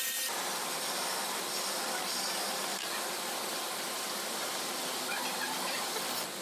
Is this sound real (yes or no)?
yes